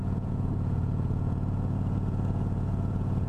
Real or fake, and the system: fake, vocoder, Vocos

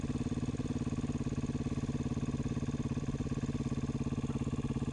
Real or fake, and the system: real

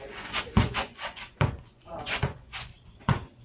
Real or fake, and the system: fake, vocoder, Vocos